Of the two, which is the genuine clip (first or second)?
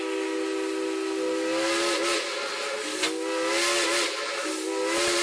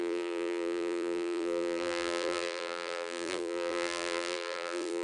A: first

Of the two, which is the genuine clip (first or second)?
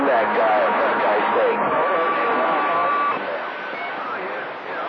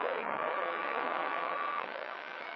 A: first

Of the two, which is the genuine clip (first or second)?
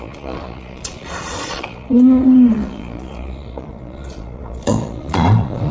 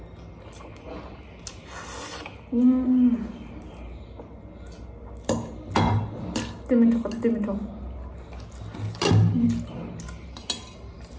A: second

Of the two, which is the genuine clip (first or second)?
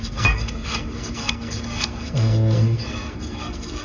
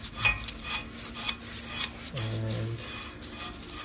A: second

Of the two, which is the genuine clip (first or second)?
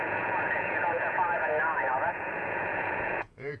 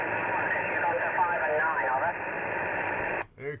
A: second